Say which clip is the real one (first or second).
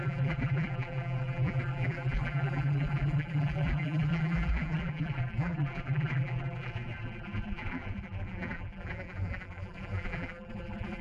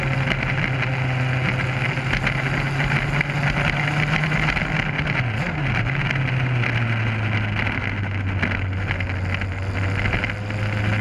second